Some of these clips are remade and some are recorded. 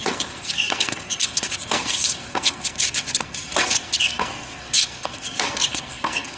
remade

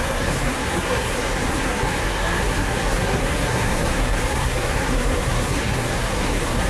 remade